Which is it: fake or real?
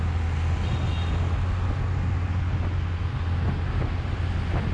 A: real